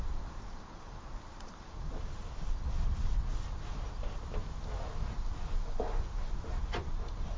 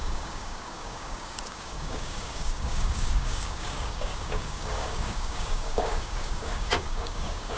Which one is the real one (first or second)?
first